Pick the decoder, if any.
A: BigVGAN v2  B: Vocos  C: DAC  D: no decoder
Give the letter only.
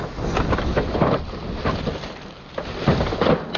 D